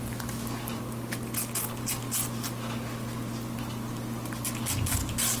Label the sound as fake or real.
real